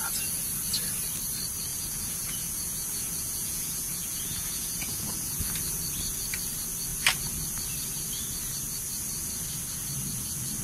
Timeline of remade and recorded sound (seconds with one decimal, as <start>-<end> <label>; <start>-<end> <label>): 0.0-1.7 recorded; 1.7-5.4 remade; 5.4-10.6 recorded